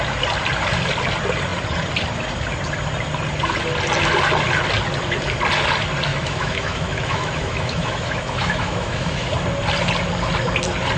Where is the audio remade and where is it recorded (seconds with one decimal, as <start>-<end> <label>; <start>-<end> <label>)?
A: 0.0-6.1 recorded; 6.1-9.3 remade; 9.3-11.0 recorded